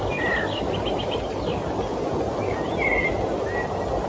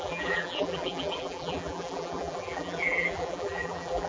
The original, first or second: first